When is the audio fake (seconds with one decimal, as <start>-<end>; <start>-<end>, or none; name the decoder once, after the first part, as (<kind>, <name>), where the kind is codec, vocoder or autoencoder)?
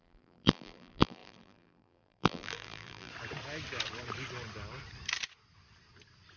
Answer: 0.0-3.1 (vocoder, BigVGAN v2)